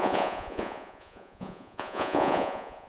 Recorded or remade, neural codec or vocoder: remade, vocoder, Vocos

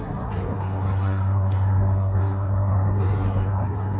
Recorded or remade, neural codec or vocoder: remade, codec, SNAC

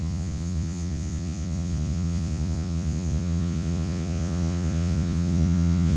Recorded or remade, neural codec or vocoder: remade, vocoder, Vocos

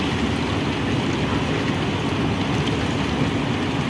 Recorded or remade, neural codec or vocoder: recorded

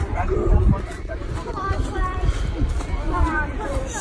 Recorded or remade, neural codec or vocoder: remade, vocoder, BigVGAN v2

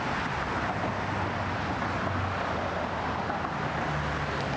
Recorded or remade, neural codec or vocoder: recorded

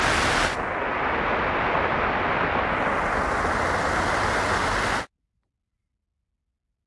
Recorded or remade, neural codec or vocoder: recorded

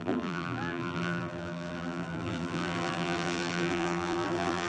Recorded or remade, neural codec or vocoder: remade, vocoder, BigVGAN v2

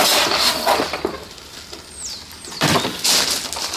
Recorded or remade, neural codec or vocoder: recorded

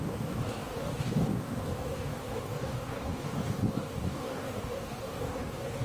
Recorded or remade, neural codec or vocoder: remade, codec, DAC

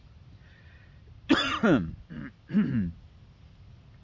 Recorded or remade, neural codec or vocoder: recorded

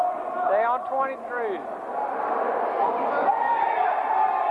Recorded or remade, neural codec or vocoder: recorded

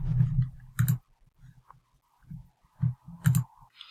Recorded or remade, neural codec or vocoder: recorded